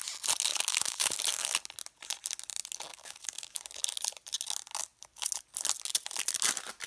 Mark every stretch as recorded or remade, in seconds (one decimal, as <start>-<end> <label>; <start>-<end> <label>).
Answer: 0.0-0.5 recorded; 0.5-1.2 remade; 1.2-2.9 recorded; 2.9-3.6 remade; 3.6-6.9 recorded